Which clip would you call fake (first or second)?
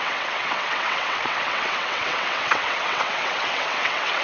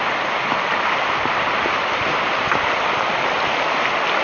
first